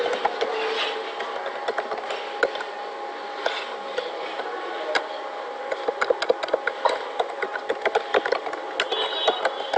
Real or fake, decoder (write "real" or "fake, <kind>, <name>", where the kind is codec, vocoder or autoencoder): real